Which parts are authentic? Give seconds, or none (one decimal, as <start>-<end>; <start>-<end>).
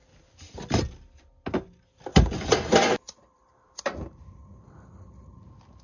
0.8-2.1; 3.8-5.8